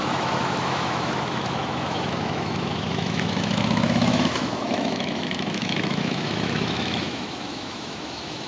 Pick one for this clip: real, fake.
fake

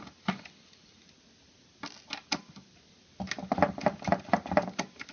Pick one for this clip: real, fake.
real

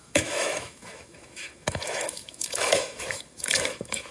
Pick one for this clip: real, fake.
fake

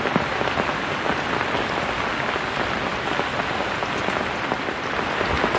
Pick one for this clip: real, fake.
real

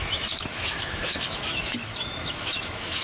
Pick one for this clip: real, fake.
fake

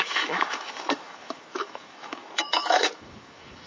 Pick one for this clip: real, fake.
fake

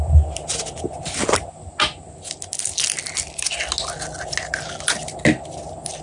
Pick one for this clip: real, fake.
real